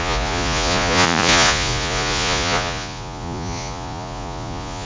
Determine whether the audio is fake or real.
fake